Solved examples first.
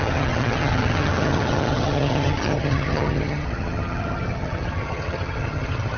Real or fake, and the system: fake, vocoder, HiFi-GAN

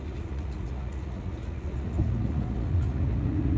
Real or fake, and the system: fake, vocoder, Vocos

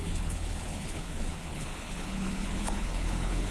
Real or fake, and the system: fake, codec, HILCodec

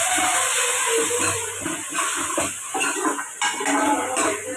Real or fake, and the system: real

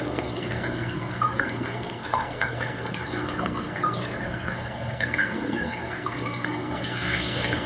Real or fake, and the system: fake, codec, SNAC